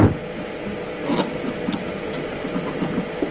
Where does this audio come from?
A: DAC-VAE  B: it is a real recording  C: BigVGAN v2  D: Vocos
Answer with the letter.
B